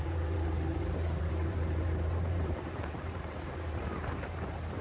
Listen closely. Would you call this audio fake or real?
fake